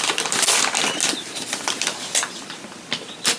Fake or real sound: real